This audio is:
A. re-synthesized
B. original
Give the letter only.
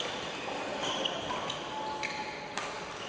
B